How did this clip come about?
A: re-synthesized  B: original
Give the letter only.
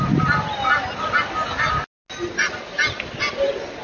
B